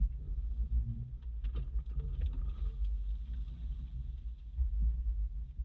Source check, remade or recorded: recorded